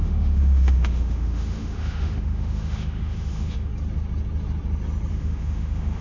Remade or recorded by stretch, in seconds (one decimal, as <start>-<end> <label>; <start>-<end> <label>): 0.0-3.7 remade; 3.7-5.1 recorded; 5.1-6.0 remade